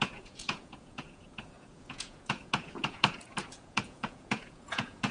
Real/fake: fake